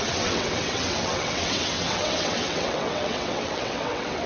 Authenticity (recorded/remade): remade